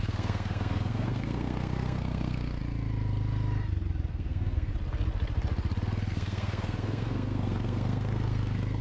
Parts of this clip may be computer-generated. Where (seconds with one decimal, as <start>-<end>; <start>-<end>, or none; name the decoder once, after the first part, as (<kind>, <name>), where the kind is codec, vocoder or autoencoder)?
0.0-2.6 (codec, SNAC); 4.1-4.7; 6.1-8.8